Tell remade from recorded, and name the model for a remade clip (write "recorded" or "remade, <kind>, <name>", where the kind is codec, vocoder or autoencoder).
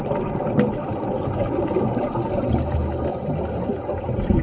recorded